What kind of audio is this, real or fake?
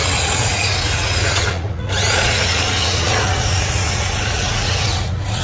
fake